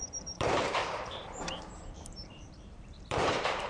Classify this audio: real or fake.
fake